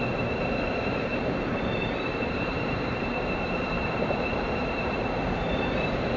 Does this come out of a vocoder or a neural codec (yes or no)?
yes